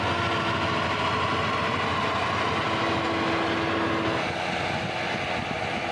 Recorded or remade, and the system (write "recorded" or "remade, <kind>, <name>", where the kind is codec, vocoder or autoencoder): recorded